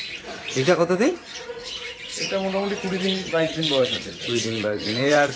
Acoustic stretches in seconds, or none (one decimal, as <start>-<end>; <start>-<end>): 2.1-3.0